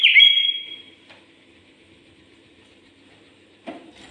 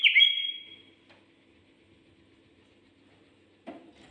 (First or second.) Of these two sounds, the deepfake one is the first